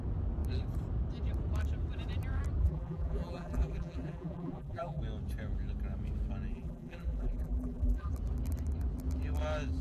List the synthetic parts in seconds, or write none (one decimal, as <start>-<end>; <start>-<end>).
2.6-5.0; 6.5-8.1